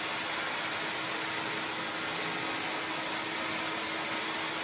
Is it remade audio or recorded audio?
recorded